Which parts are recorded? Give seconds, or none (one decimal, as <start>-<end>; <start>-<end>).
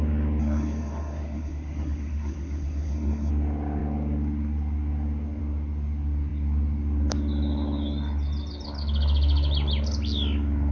0.0-0.4; 3.3-10.7